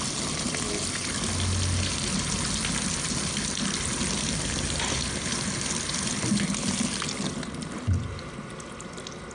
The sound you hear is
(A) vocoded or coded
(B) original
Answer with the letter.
B